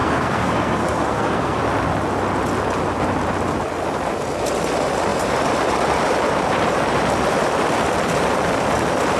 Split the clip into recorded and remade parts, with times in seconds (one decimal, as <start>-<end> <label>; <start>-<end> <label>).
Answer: 0.0-1.6 remade; 1.6-9.2 recorded